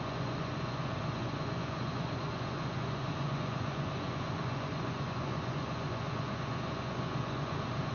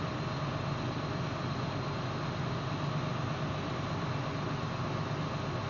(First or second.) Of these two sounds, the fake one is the first